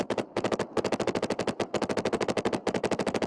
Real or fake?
fake